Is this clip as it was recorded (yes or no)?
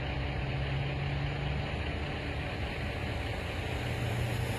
yes